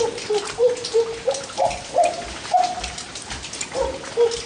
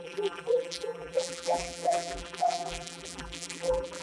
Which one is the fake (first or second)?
second